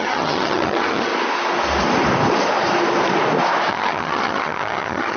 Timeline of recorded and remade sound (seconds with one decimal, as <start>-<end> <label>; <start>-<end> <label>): 0.0-1.1 remade; 1.1-3.7 recorded; 3.7-5.2 remade